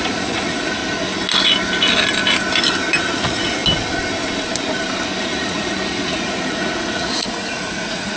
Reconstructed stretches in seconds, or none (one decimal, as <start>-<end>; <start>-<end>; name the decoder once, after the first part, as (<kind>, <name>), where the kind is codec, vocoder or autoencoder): 0.0-0.8 (vocoder, Vocos); 3.0-3.6; 5.2-8.2